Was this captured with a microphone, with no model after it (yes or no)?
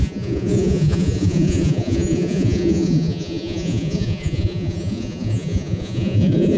no